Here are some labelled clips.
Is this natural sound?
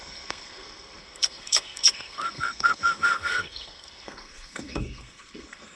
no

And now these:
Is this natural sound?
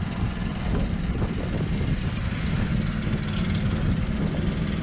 yes